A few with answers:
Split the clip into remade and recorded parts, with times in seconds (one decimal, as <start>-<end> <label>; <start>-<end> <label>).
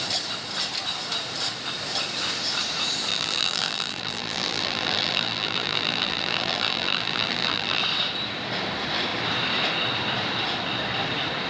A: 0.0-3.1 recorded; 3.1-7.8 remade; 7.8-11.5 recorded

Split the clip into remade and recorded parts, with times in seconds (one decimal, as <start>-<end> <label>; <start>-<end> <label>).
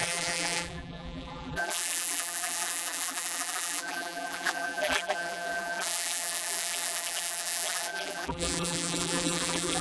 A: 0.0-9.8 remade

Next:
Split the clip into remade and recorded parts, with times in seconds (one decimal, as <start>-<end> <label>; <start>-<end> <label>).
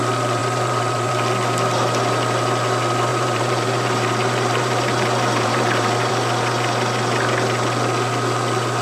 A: 0.0-0.4 recorded; 0.4-1.1 remade; 1.1-3.1 recorded; 3.1-6.1 remade; 6.1-8.8 recorded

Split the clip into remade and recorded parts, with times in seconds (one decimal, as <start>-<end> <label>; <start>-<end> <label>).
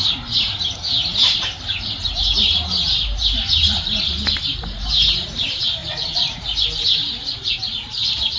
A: 0.0-5.8 remade; 5.8-7.5 recorded; 7.5-8.4 remade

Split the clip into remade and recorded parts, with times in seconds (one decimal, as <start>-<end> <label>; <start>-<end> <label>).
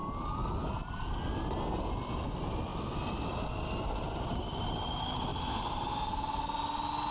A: 0.0-2.7 recorded; 2.7-3.8 remade; 3.8-5.3 recorded; 5.3-5.8 remade; 5.8-7.1 recorded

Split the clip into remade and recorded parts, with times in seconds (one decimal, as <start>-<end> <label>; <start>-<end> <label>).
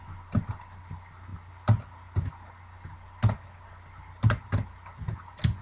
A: 0.0-5.6 recorded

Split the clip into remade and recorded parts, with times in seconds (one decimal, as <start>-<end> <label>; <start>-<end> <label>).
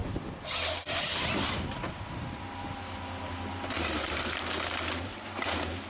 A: 0.0-2.2 remade; 2.2-5.9 recorded